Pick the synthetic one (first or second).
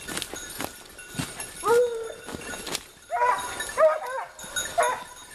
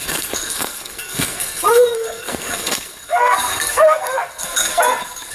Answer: second